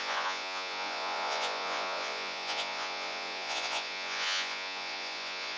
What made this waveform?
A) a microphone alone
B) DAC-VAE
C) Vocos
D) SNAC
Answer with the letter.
C